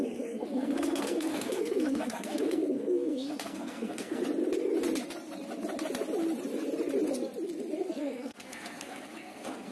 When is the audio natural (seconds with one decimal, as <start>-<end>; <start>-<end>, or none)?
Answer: 4.2-8.0